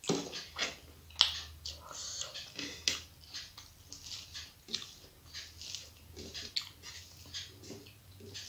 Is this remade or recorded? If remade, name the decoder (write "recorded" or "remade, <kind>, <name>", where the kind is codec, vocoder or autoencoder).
recorded